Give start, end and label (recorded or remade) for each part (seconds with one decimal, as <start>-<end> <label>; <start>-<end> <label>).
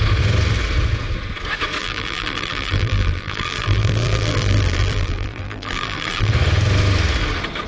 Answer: 0.0-1.8 recorded; 1.8-6.3 remade; 6.3-7.7 recorded